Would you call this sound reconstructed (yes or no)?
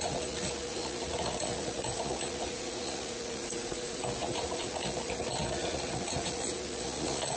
yes